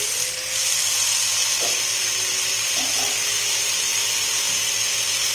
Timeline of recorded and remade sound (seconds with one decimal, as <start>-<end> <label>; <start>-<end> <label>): 0.0-5.3 recorded